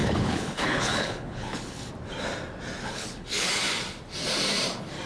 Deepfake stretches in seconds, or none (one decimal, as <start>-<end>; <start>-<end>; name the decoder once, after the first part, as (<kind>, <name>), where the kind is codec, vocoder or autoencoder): 0.0-1.9 (codec, HILCodec); 2.8-3.5